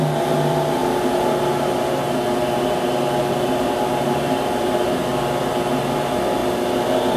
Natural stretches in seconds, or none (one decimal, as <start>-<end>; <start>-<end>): 0.8-3.2; 5.1-5.8; 6.4-7.2